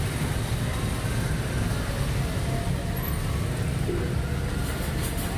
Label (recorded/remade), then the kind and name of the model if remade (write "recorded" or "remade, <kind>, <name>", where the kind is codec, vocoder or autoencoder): recorded